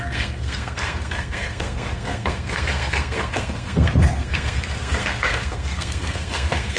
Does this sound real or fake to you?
fake